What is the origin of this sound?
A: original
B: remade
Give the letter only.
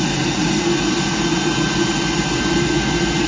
A